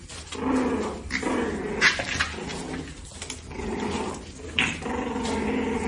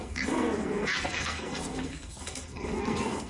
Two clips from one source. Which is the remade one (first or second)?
second